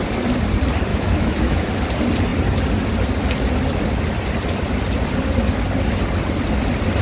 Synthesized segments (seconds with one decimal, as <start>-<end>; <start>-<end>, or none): 0.9-1.7